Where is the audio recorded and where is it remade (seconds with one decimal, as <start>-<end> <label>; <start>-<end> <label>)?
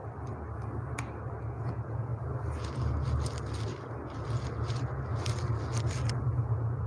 0.0-1.4 recorded; 1.4-2.1 remade; 2.1-6.2 recorded; 6.2-6.9 remade